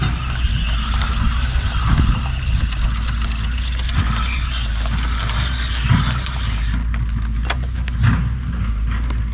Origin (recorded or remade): recorded